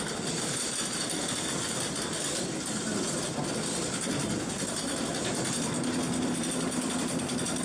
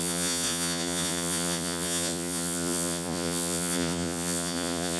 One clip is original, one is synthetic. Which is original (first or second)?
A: first